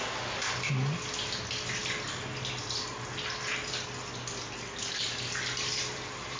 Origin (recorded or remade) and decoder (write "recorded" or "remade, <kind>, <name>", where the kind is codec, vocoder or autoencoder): recorded